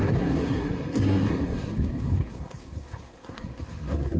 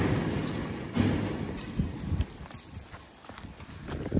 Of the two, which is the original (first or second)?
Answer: second